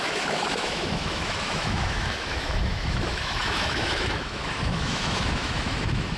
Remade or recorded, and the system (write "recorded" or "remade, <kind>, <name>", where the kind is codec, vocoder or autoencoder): remade, autoencoder, DAC-VAE